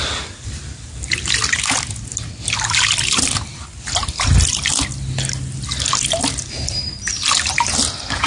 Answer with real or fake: real